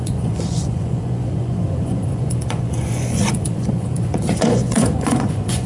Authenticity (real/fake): fake